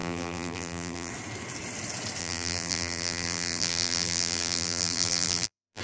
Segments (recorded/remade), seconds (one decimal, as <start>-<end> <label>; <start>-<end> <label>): 0.0-1.1 remade; 1.1-2.2 recorded; 2.2-5.8 remade